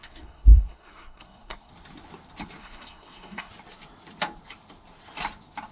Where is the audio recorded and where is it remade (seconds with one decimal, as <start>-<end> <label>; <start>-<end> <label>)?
0.0-1.7 remade; 1.7-2.6 recorded; 2.6-3.5 remade; 3.5-5.7 recorded